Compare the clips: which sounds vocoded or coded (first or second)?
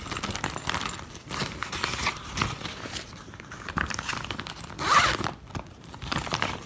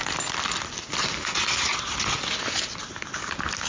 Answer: first